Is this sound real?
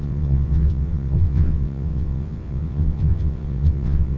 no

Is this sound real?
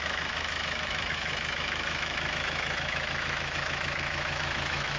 no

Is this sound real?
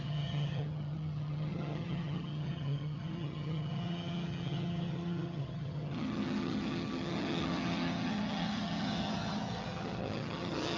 no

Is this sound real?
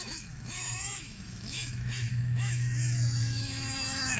no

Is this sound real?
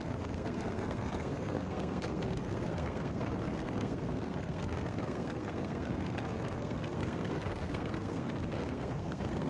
no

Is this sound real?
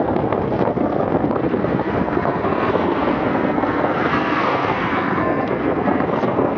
no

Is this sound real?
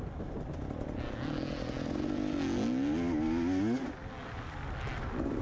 yes